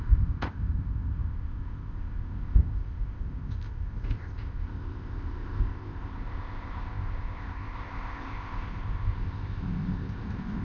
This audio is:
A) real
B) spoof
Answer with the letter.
B